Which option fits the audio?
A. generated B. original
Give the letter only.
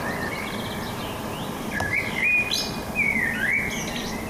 B